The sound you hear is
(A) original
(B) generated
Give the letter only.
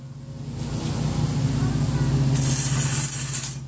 A